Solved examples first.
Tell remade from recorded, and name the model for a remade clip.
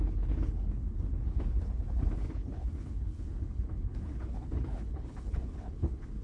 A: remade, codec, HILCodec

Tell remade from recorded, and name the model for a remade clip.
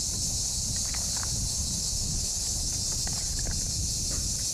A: recorded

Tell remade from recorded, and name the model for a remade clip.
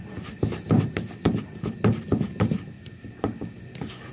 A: recorded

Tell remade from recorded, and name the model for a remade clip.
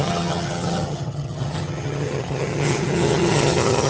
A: remade, vocoder, HiFi-GAN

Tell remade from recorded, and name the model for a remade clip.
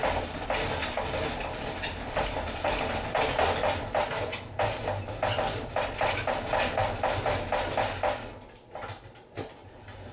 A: recorded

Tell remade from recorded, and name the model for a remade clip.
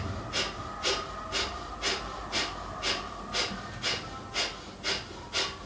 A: recorded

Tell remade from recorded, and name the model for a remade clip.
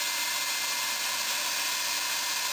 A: recorded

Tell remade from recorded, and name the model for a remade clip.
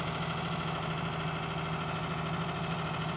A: recorded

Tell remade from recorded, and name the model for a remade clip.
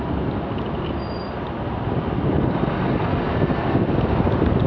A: recorded